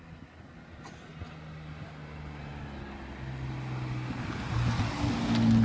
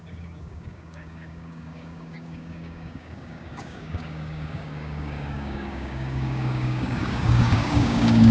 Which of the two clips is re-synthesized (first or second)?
second